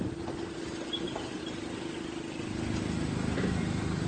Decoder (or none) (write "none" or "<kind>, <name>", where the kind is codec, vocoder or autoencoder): none